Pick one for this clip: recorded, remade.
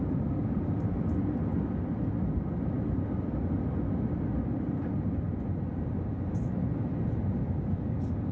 recorded